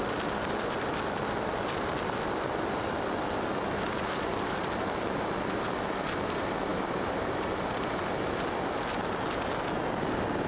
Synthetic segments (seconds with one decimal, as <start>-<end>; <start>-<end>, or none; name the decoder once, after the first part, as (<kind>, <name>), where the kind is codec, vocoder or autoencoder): 6.7-7.5 (vocoder, BigVGAN v2)

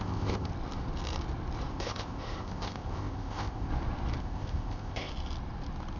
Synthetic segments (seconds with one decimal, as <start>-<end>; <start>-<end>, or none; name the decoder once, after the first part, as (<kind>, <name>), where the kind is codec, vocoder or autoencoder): 0.0-0.5 (codec, ZipCodec); 1.7-3.7; 4.2-5.1

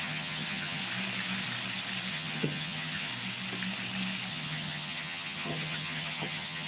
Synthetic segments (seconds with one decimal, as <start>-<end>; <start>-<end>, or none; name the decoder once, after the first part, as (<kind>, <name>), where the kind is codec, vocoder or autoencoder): 0.0-0.8 (vocoder, HiFi-GAN); 2.1-3.1; 4.3-6.7

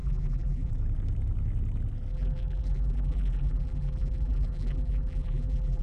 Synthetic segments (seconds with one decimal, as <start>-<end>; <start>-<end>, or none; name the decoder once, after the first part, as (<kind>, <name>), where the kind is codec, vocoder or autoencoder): 0.0-0.7 (vocoder, BigVGAN v2); 2.1-5.8

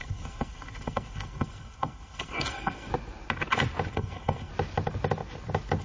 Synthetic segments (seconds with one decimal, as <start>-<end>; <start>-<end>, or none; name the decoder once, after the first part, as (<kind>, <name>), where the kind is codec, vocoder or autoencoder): 0.0-2.9 (codec, SNAC); 3.9-4.5

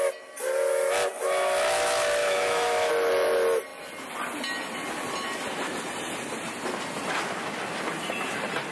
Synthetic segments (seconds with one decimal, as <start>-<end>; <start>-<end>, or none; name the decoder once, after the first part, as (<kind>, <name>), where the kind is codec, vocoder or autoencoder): 2.2-2.9 (autoencoder, DAC-VAE)